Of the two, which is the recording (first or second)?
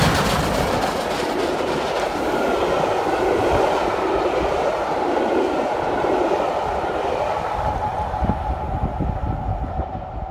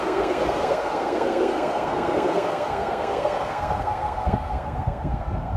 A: first